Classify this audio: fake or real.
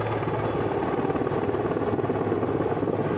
real